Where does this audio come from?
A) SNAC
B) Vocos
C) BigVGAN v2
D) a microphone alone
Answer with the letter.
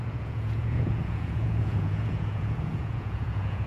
B